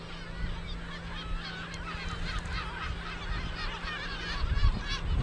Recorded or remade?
recorded